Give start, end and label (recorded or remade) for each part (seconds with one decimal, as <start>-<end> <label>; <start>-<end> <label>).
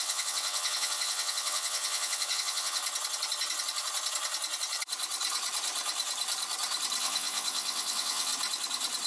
0.0-2.8 remade; 2.8-7.0 recorded; 7.0-8.3 remade; 8.3-9.1 recorded